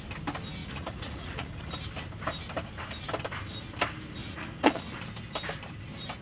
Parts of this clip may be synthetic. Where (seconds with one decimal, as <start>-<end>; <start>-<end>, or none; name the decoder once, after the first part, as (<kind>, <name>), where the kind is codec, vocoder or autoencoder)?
0.6-1.6 (vocoder, Vocos); 4.2-5.0